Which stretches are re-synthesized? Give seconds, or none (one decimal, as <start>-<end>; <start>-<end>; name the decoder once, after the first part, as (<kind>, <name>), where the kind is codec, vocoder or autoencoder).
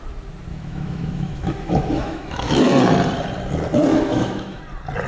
0.5-2.6 (autoencoder, DAC-VAE); 3.9-4.6